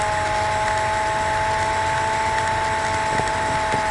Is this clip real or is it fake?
real